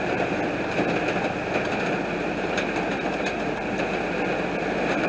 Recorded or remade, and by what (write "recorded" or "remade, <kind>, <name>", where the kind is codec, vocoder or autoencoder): recorded